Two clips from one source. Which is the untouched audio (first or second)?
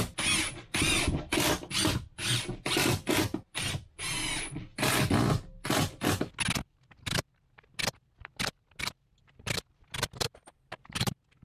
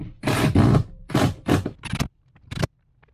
first